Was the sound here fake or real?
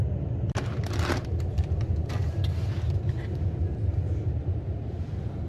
real